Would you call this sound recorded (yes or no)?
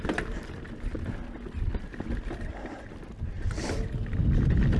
yes